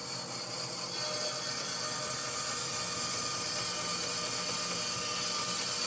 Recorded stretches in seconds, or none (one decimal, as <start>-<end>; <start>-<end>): 0.0-5.9